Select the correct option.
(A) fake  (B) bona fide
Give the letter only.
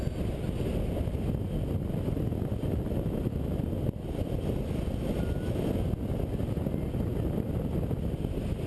B